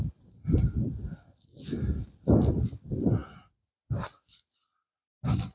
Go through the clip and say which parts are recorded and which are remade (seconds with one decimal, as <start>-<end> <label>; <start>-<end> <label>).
0.0-5.5 recorded